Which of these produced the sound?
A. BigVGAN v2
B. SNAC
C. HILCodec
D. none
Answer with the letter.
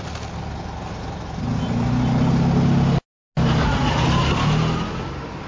D